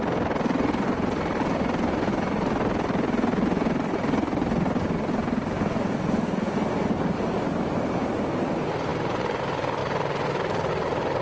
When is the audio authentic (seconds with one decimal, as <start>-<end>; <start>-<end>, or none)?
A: 0.0-11.2